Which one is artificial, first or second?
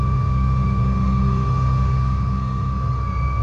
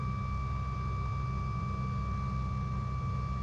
first